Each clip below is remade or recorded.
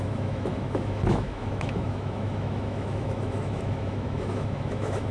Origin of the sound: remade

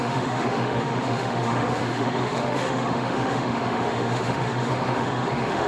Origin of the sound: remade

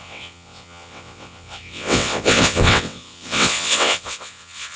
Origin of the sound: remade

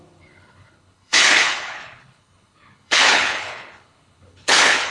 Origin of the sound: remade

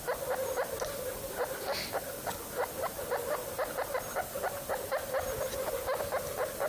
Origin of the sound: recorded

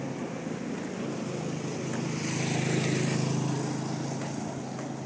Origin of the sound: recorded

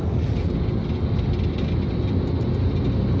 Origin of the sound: recorded